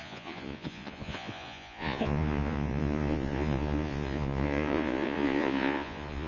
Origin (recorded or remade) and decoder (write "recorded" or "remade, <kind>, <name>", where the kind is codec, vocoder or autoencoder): remade, vocoder, Vocos